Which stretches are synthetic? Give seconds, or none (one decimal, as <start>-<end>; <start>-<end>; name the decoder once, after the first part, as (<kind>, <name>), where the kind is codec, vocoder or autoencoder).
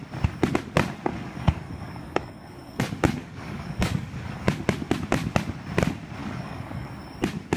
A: 1.1-2.8 (codec, DAC); 3.2-4.6; 6.2-6.9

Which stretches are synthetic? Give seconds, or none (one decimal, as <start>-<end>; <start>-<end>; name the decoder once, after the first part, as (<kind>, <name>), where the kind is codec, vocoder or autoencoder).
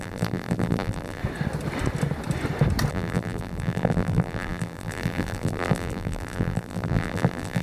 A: 0.0-1.2 (vocoder, BigVGAN v2); 2.9-7.6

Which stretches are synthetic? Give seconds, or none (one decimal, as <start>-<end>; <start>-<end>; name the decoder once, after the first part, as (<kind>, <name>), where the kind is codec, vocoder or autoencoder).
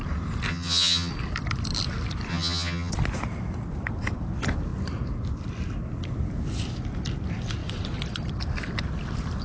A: 0.5-1.1 (vocoder, HiFi-GAN); 2.3-2.9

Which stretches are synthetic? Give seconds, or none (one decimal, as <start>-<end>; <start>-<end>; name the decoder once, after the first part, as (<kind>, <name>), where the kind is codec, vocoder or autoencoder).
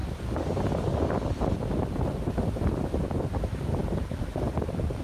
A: 3.7-4.2 (vocoder, BigVGAN v2)